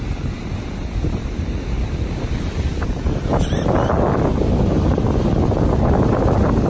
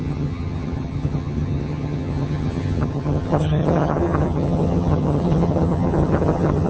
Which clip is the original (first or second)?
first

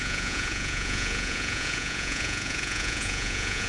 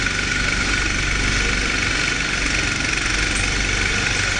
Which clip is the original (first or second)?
second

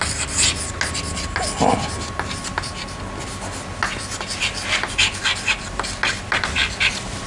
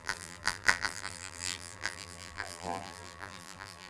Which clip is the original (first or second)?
first